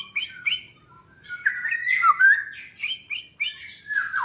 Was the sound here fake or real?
real